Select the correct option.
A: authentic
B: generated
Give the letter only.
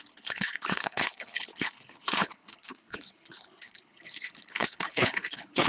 B